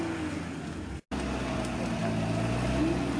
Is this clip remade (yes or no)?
no